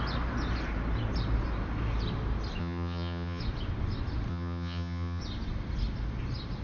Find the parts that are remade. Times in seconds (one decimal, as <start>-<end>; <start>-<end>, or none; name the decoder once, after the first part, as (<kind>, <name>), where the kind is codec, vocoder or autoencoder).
2.6-3.4 (vocoder, HiFi-GAN); 4.3-5.2